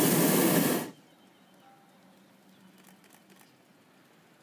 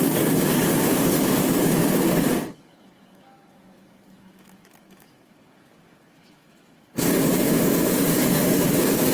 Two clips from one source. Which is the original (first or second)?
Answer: first